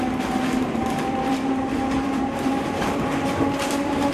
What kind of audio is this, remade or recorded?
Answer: remade